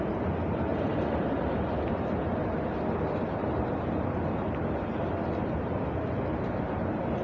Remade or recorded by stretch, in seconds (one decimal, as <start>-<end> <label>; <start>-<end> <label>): 0.0-0.7 recorded; 0.7-1.8 remade; 1.8-7.2 recorded